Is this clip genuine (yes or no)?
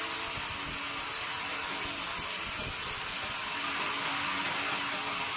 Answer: yes